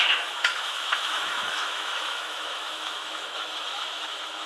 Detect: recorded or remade remade